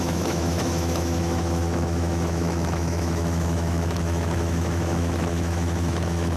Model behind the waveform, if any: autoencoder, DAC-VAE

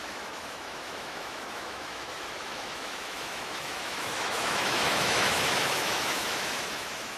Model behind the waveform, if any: autoencoder, DAC-VAE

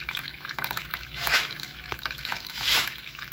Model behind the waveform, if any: autoencoder, DAC-VAE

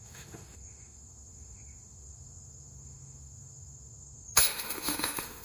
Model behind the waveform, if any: autoencoder, DAC-VAE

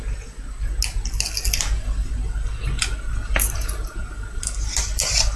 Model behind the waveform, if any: none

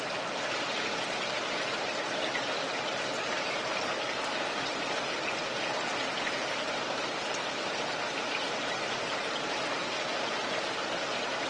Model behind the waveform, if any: none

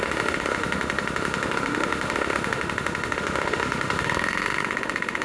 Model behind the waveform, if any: autoencoder, DAC-VAE